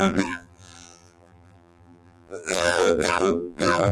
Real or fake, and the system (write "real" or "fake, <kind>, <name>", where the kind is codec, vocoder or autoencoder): fake, vocoder, BigVGAN v2